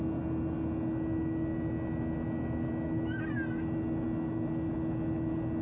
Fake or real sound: real